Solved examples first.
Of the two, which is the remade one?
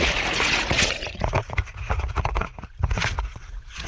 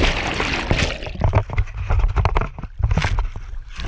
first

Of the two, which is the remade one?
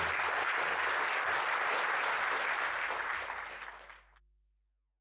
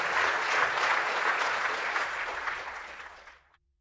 second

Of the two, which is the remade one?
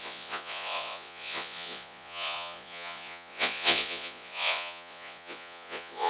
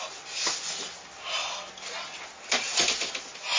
first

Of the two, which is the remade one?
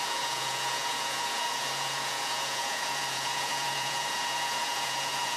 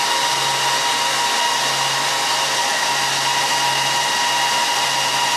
first